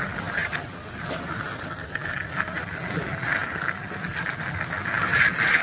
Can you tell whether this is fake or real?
real